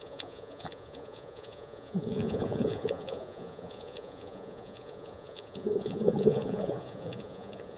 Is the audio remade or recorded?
remade